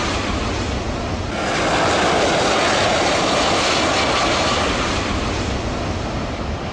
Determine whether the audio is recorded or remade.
recorded